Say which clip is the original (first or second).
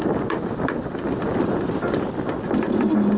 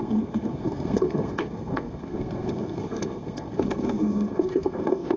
first